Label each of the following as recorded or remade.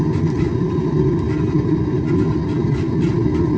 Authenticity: recorded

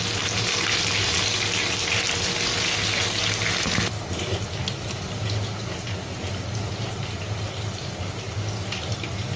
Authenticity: recorded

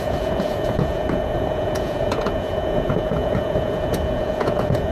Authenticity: remade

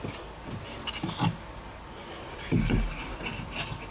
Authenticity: recorded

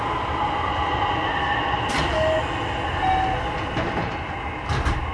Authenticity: recorded